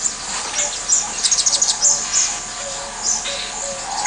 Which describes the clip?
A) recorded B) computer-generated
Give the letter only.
A